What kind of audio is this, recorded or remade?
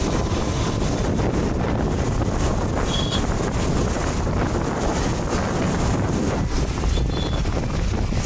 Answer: recorded